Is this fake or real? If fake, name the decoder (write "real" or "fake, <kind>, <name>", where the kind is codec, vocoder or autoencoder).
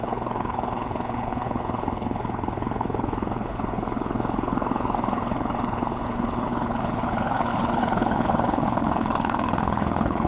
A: fake, codec, HILCodec